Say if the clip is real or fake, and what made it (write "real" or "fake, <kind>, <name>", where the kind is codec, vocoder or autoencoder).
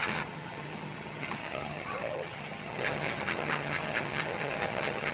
fake, vocoder, HiFi-GAN